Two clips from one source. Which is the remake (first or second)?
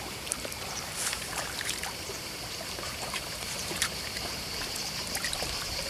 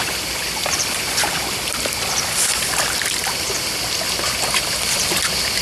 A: first